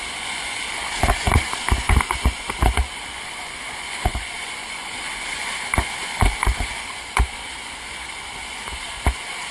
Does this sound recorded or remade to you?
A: remade